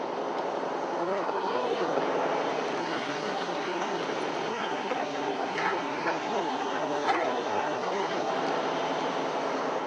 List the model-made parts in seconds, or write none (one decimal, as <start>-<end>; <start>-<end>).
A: 1.0-2.0; 2.8-4.0; 4.5-8.3